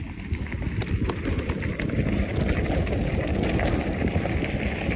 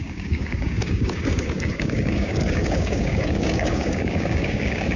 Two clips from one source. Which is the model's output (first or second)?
second